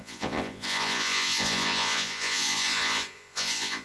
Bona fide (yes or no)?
no